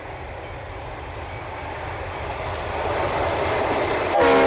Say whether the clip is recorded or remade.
recorded